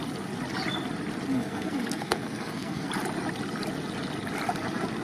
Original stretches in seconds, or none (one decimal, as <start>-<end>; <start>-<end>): 0.0-1.3; 2.9-5.0